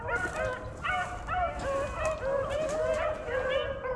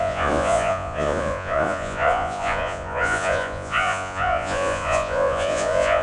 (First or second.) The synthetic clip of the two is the second